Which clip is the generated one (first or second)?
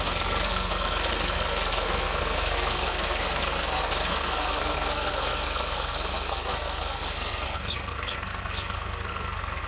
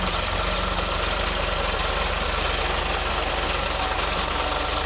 first